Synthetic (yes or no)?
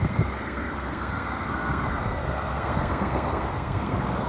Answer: yes